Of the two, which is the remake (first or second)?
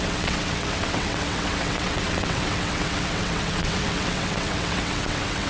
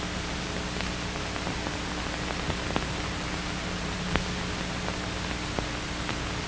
first